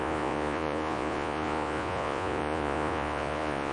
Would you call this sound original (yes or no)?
no